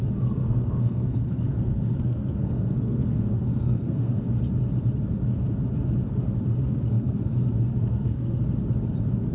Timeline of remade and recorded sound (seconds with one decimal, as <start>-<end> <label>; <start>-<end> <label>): 0.0-0.4 recorded; 0.4-4.2 remade; 4.2-6.6 recorded; 6.6-7.2 remade; 7.2-7.7 recorded; 7.7-8.4 remade; 8.4-9.3 recorded